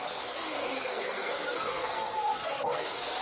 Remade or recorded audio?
remade